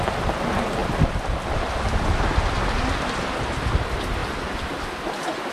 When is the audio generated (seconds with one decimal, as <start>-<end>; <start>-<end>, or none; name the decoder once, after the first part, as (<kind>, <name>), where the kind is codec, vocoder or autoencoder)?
none